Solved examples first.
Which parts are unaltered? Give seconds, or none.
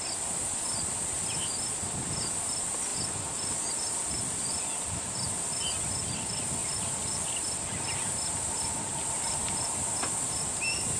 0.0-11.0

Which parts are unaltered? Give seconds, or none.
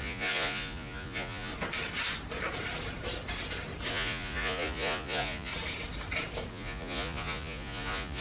1.5-3.9; 5.5-6.5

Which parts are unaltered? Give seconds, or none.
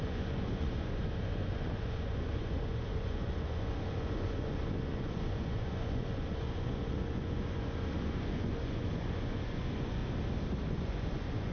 10.0-10.7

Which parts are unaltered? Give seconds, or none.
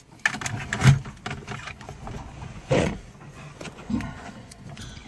0.0-1.6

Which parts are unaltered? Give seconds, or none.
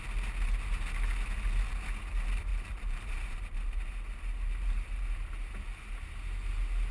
0.0-2.5; 3.9-6.9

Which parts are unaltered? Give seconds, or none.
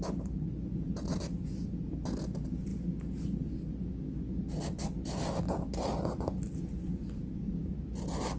0.0-8.4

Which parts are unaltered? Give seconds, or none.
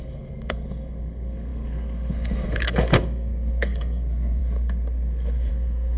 none